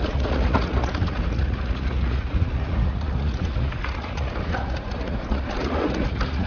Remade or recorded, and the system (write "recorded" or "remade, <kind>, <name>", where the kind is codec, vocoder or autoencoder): remade, vocoder, Vocos